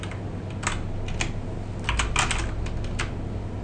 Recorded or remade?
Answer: recorded